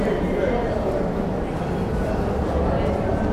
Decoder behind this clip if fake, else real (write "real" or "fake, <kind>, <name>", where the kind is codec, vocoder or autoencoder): real